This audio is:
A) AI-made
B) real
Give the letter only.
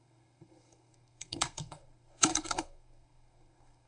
A